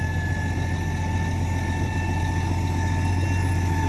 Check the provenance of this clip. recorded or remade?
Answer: recorded